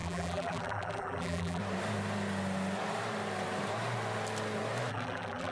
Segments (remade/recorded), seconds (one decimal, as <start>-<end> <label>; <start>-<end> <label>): 0.0-1.6 remade; 1.6-4.9 recorded; 4.9-5.5 remade